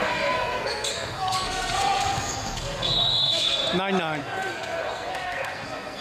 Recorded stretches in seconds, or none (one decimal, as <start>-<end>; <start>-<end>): 3.6-4.2